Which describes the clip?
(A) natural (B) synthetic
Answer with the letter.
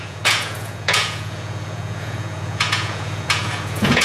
B